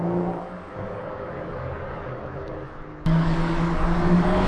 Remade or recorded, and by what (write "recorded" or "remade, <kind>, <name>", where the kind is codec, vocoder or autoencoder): remade, codec, DAC